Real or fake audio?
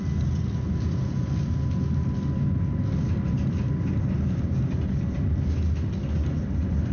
real